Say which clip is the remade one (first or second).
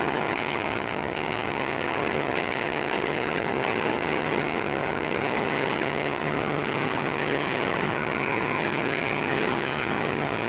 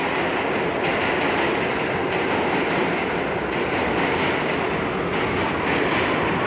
first